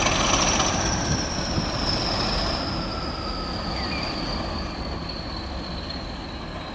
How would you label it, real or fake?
real